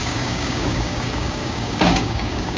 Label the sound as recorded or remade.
remade